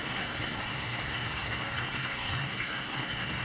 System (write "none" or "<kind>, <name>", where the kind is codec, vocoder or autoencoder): codec, SNAC